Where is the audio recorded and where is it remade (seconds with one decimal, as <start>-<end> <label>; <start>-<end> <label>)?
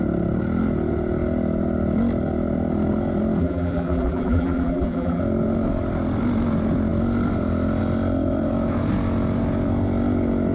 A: 0.0-3.4 recorded; 3.4-5.2 remade; 5.2-10.5 recorded